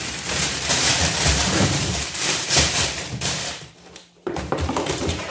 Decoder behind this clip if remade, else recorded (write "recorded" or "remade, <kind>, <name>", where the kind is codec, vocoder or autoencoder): remade, vocoder, BigVGAN v2